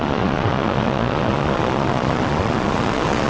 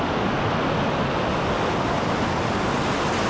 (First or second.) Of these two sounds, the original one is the second